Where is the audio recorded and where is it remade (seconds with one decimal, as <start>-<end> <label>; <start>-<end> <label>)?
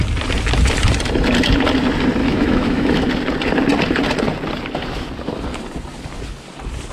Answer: 0.0-2.2 recorded; 2.2-3.1 remade; 3.1-6.9 recorded